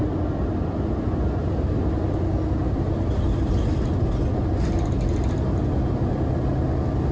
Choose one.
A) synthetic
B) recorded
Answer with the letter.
B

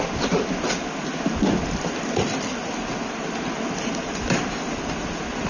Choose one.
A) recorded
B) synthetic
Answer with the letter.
A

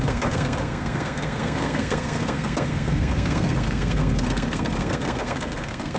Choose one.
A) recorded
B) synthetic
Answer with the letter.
B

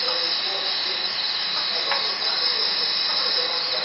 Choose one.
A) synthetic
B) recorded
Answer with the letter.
B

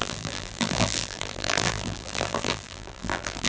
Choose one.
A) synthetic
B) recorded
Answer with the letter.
A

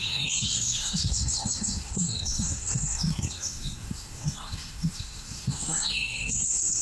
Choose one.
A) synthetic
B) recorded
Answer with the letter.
A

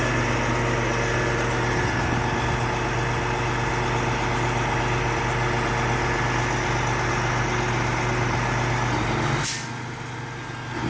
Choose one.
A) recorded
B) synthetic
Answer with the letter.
A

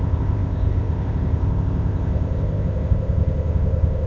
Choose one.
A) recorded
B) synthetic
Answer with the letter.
B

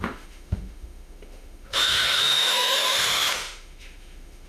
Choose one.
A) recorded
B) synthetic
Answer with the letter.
B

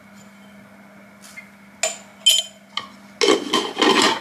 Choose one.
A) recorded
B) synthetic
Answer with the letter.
A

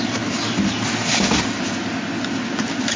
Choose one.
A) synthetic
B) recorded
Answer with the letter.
B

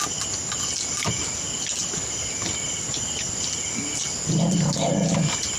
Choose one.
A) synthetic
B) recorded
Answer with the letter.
B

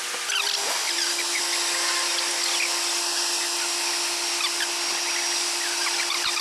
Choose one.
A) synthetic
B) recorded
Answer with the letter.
B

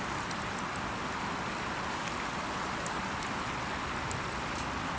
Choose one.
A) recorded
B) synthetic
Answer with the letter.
A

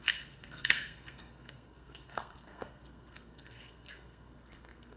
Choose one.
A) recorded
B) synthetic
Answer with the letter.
B